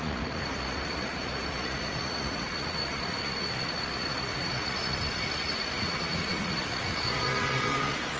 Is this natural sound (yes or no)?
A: no